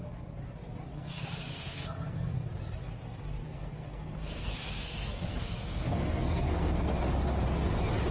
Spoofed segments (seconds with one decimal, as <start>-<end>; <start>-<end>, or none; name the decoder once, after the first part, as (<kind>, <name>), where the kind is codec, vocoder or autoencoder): 0.9-2.5 (codec, SNAC); 3.4-7.0